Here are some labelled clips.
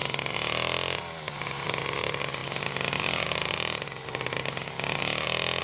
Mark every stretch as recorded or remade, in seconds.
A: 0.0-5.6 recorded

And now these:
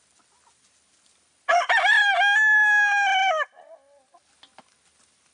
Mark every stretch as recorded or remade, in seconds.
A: 0.0-5.3 recorded

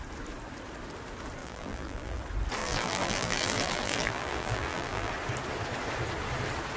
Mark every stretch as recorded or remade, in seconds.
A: 0.0-1.4 recorded; 1.4-2.2 remade; 2.2-2.6 recorded; 2.6-5.1 remade; 5.1-6.8 recorded